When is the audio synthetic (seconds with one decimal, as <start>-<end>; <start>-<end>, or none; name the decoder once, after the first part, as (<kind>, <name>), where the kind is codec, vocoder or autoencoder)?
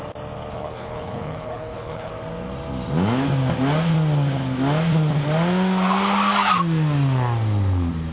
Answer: 0.5-2.1 (codec, HILCodec)